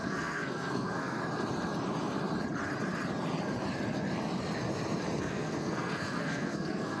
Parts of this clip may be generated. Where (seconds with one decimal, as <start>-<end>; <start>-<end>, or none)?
0.0-1.2; 5.2-7.0